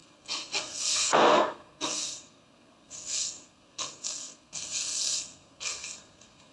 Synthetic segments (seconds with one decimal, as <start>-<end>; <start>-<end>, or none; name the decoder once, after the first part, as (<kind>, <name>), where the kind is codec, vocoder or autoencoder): 0.0-6.5 (codec, SNAC)